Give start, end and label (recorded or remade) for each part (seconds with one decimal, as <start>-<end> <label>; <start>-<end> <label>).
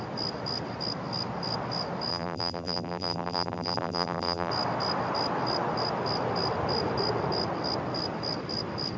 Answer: 0.0-2.1 recorded; 2.1-4.5 remade; 4.5-9.0 recorded